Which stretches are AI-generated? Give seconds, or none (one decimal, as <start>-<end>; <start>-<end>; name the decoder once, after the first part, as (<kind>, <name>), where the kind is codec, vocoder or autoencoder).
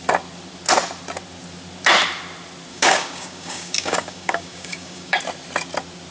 2.7-5.2 (codec, DAC)